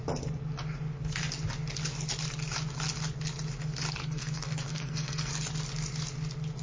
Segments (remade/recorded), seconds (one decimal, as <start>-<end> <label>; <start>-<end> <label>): 0.0-4.0 recorded; 4.0-5.3 remade; 5.3-6.6 recorded